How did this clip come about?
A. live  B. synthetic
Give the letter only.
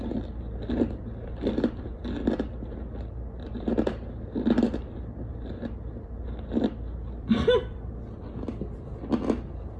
A